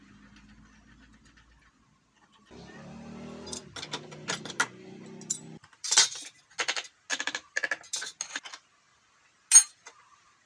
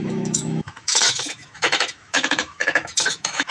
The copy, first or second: second